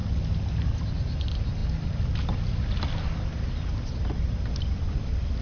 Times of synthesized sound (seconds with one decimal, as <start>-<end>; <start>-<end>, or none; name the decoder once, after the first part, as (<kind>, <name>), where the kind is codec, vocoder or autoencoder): none